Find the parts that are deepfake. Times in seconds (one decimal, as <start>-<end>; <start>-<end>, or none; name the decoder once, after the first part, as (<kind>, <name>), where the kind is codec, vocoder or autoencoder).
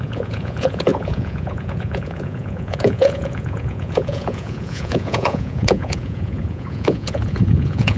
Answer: 0.0-8.0 (vocoder, Vocos)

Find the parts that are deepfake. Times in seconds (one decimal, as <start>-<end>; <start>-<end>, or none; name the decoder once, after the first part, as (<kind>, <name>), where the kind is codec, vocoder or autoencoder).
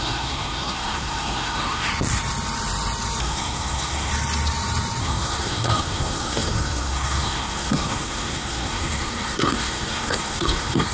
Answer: 0.0-1.9 (codec, SNAC); 3.2-4.1; 5.0-10.9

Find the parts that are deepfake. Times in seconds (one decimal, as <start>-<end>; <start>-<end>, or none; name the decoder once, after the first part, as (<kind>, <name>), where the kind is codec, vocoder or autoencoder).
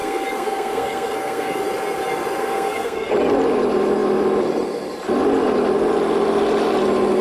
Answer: 0.0-1.6 (codec, SNAC); 2.4-3.1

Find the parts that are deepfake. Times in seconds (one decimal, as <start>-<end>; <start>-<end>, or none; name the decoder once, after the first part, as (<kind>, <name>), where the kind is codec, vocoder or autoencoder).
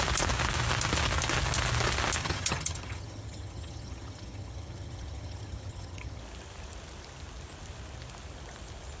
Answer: 2.2-6.2 (vocoder, HiFi-GAN)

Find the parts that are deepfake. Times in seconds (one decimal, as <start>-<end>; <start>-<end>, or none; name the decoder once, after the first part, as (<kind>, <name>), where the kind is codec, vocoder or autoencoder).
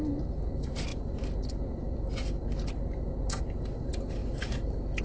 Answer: none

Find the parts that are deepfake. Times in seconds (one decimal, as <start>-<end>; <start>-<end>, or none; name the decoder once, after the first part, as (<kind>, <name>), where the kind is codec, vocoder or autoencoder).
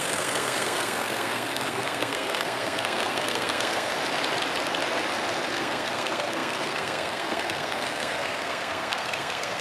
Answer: 0.0-3.9 (codec, SNAC); 5.5-9.6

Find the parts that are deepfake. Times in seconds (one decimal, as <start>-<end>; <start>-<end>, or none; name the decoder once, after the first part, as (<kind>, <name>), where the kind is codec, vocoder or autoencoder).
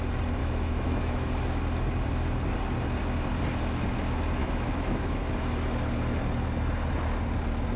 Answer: 0.4-1.3 (autoencoder, DAC-VAE); 4.4-5.3